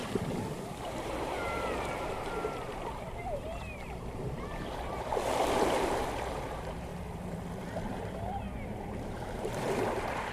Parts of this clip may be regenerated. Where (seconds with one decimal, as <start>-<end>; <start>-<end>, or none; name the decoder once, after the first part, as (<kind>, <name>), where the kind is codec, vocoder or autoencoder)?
0.0-6.9 (vocoder, BigVGAN v2); 7.9-10.3